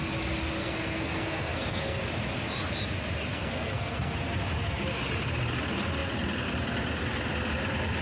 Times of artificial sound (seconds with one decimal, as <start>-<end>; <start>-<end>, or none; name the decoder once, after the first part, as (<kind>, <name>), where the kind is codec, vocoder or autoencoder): 0.6-2.0 (codec, SNAC); 3.3-4.1